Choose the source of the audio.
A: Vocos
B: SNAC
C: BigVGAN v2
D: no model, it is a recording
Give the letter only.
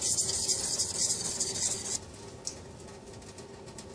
D